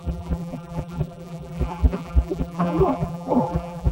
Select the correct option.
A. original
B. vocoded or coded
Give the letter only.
B